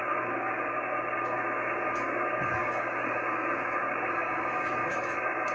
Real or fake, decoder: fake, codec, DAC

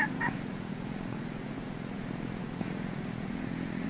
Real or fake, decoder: fake, vocoder, Vocos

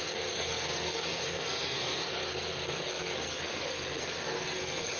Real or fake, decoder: fake, codec, SNAC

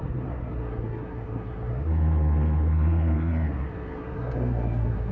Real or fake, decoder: fake, codec, SNAC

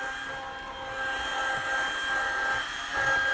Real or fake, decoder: real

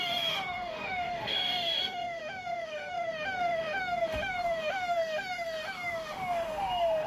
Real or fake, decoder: fake, autoencoder, DAC-VAE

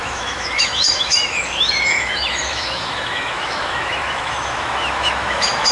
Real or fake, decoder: fake, autoencoder, DAC-VAE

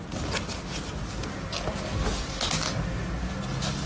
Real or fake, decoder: real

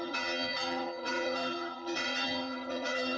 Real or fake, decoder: fake, vocoder, HiFi-GAN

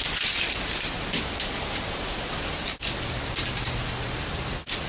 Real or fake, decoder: real